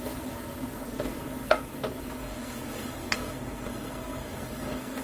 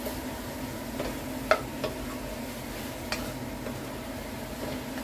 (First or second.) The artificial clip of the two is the first